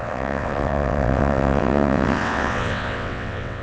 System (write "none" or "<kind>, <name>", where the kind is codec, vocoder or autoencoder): vocoder, WaveNeXt